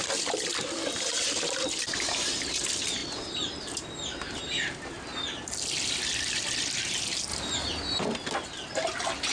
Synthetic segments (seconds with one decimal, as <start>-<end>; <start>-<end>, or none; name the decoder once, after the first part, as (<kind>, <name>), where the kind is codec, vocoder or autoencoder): none